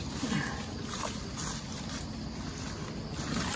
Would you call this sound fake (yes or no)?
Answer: no